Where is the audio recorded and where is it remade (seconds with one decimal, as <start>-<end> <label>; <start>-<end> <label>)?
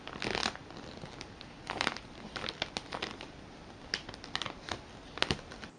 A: 0.0-5.8 recorded